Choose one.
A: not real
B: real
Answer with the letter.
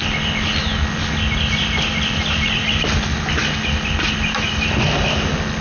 B